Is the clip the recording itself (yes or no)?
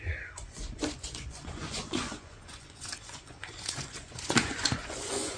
no